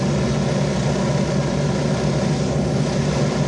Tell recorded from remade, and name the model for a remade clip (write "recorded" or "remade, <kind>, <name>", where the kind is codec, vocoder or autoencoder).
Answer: recorded